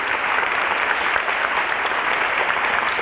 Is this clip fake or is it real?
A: fake